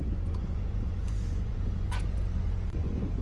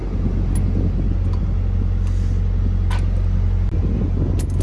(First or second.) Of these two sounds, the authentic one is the second